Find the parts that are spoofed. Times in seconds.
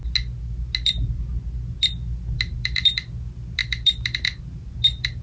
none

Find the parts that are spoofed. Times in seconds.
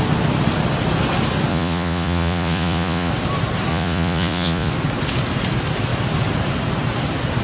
1.5-3.1 (vocoder, Vocos); 3.7-4.7